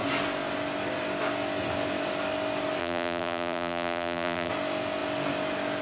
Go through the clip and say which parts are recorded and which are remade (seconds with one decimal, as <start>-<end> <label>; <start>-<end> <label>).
0.0-2.8 recorded; 2.8-4.5 remade; 4.5-5.8 recorded